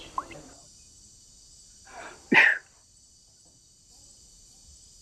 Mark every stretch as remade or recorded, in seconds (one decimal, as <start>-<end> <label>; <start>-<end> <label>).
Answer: 0.0-5.0 recorded